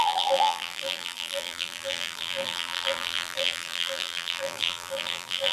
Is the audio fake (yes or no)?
yes